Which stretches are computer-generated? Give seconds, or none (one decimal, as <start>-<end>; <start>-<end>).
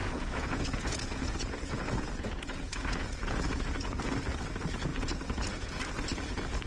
0.0-4.0; 4.9-5.8